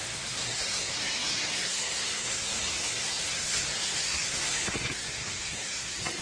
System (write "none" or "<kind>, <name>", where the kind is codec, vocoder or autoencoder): codec, SNAC